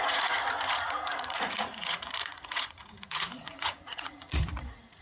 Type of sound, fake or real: fake